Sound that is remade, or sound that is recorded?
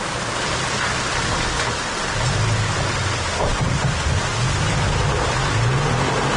recorded